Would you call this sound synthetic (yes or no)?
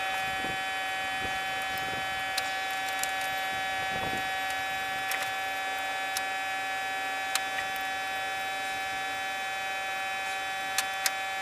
no